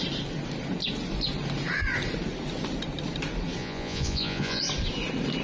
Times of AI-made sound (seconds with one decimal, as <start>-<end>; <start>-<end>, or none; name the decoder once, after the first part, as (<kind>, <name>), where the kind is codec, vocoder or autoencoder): 3.6-4.6 (vocoder, Vocos)